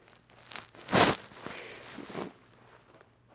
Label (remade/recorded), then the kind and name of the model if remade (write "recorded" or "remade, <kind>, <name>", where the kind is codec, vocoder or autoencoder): recorded